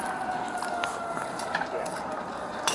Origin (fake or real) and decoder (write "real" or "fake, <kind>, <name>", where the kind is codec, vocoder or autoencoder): real